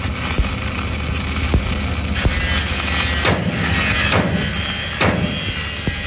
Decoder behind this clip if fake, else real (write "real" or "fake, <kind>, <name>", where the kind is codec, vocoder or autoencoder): real